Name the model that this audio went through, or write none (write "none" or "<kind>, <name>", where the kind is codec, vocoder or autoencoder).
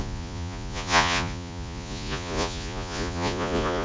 vocoder, Vocos